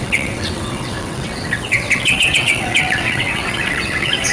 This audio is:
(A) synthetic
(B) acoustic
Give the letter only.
A